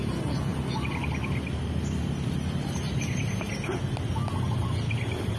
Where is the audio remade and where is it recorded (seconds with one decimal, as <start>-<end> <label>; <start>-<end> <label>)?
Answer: 0.0-5.4 recorded